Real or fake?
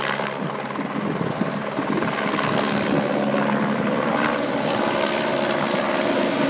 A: real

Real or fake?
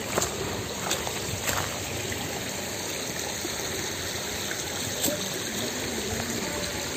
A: real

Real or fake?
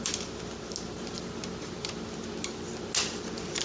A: real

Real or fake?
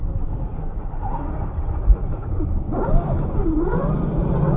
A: real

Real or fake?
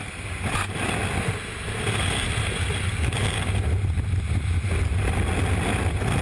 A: real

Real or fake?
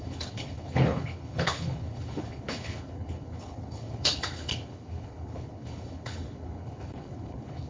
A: fake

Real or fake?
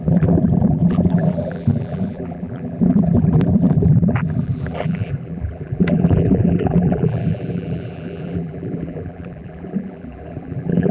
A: fake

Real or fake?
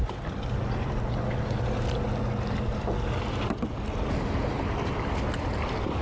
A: real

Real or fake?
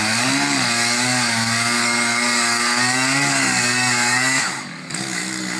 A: fake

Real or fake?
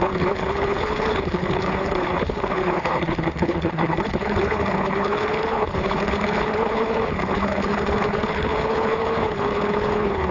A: fake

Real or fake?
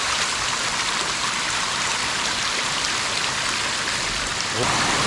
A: real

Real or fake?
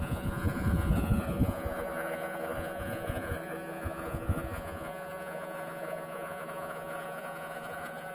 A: fake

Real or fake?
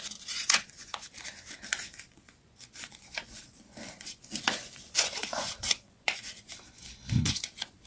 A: fake